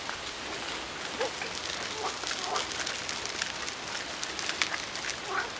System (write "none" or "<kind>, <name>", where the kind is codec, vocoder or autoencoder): none